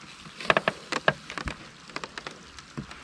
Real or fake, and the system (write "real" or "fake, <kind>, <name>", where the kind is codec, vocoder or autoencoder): real